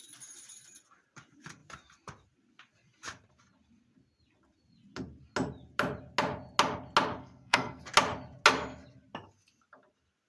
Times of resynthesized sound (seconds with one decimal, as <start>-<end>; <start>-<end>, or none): 7.2-7.8